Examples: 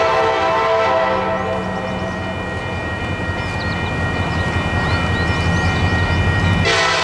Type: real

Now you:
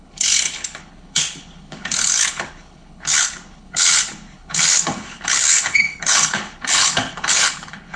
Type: fake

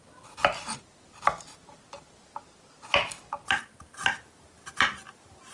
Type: real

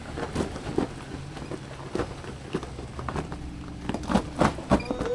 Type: real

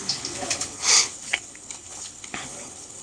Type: fake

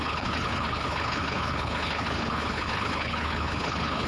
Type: fake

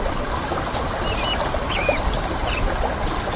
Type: real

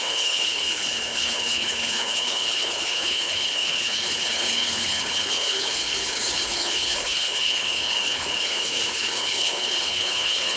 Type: fake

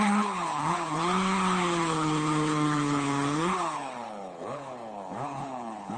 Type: fake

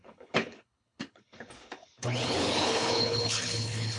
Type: fake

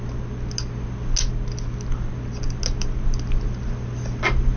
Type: real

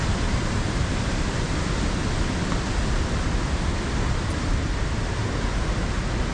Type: real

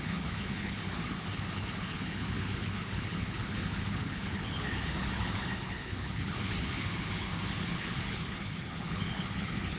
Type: fake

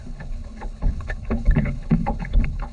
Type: fake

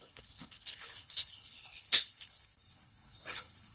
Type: fake